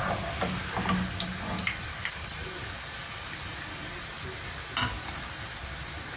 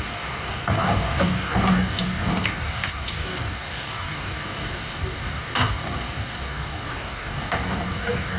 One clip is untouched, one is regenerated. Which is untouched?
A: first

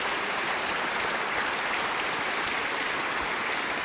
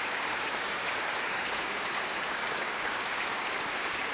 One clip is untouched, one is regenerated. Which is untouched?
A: first